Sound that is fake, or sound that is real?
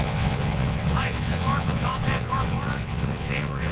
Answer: fake